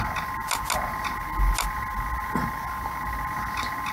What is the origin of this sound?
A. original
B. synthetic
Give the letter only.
A